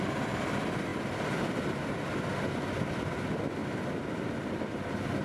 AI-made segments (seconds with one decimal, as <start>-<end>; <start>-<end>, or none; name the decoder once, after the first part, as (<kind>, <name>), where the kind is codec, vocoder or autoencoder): 0.9-1.9 (vocoder, BigVGAN v2); 3.6-4.7